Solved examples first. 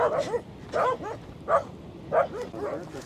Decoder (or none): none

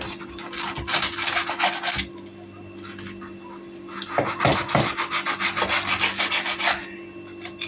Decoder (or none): none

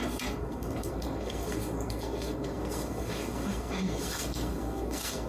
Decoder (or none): codec, SNAC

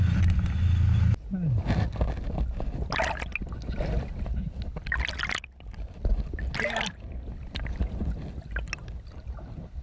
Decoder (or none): none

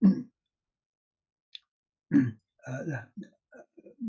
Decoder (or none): none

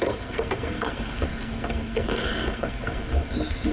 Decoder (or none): codec, SNAC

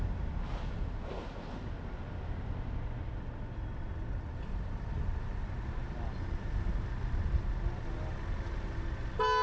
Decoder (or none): none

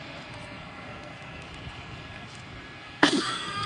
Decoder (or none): codec, SNAC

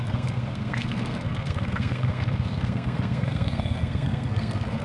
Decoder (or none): codec, SNAC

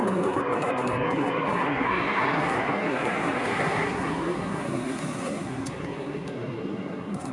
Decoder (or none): codec, SNAC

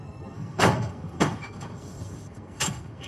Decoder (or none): codec, SNAC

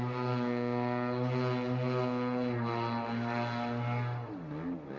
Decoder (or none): none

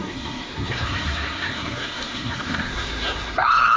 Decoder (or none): codec, SNAC